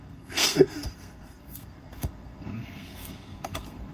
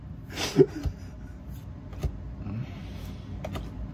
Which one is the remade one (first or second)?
first